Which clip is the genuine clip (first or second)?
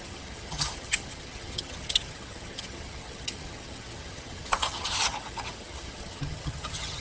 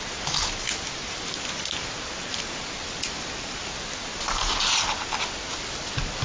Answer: second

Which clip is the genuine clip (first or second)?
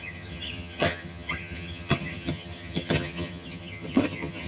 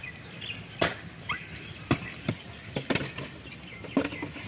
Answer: second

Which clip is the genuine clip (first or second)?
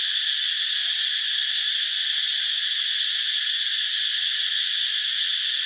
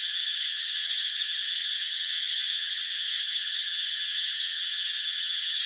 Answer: first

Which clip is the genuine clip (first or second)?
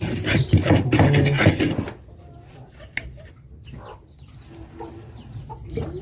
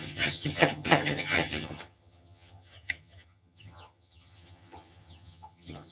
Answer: first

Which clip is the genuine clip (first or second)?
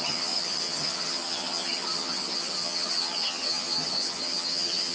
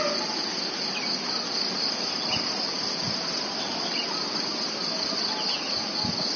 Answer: second